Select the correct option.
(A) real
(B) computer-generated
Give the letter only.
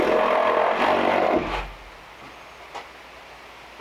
A